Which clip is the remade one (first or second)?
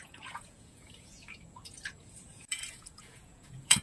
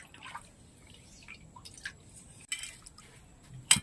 first